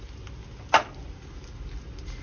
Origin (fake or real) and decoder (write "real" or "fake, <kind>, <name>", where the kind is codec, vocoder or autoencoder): real